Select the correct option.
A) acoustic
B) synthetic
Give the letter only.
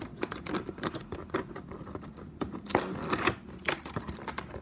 A